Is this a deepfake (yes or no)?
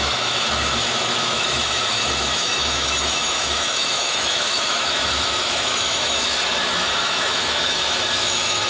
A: yes